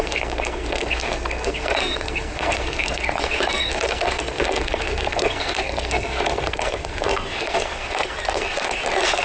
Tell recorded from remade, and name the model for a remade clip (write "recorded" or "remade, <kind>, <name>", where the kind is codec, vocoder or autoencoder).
remade, codec, SNAC